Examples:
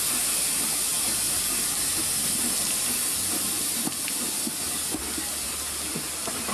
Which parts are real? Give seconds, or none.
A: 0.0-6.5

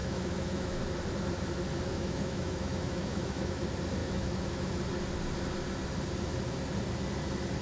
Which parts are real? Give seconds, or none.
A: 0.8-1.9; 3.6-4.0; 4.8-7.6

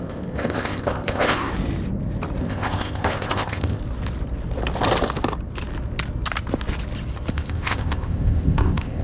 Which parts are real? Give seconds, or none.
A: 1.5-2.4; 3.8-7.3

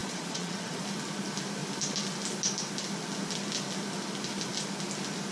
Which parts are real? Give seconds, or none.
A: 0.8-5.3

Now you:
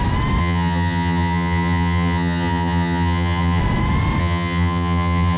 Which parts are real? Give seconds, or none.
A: 0.0-0.4; 3.6-4.2